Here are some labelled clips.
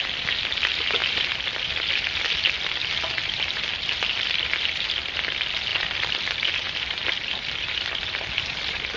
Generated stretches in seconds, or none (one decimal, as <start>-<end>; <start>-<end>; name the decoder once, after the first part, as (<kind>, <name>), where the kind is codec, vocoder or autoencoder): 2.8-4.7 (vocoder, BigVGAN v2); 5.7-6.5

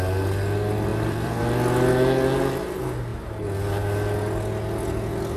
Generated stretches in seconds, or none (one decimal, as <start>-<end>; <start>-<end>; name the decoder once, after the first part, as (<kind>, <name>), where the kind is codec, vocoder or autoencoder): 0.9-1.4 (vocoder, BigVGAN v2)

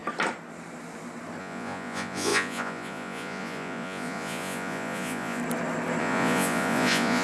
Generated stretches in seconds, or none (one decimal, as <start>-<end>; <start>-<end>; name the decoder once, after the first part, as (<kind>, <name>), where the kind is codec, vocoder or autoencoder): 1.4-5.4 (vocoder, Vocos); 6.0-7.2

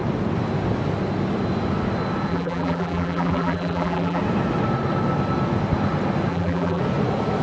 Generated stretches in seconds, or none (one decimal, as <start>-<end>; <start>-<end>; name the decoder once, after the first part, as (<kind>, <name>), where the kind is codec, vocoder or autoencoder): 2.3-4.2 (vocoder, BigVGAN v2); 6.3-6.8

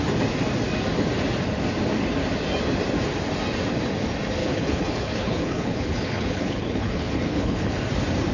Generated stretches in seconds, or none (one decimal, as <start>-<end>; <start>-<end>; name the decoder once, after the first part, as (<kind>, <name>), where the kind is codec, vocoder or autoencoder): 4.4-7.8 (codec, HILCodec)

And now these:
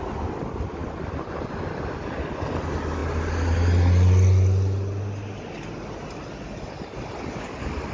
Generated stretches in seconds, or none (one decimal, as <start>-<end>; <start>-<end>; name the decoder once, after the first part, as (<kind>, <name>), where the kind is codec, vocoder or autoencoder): none